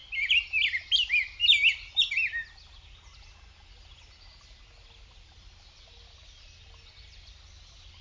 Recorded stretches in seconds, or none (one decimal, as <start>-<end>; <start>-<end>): 0.0-8.0